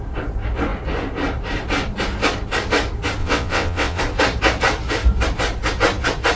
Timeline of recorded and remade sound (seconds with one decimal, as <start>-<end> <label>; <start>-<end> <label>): 0.0-3.2 recorded; 3.2-4.0 remade; 4.0-6.4 recorded